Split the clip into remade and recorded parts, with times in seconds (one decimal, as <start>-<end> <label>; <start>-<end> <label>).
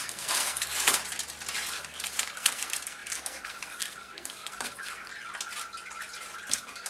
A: 0.0-1.0 remade; 1.0-1.7 recorded; 1.7-5.1 remade; 5.1-6.5 recorded; 6.5-6.9 remade